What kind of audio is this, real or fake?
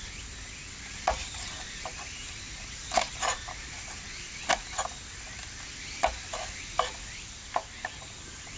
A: real